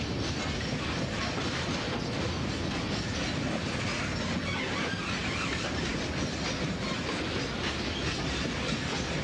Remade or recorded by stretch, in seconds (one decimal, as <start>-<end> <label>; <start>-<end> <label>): 0.0-9.2 recorded